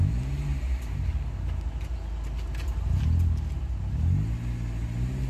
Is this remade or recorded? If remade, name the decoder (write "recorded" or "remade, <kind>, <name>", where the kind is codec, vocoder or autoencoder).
recorded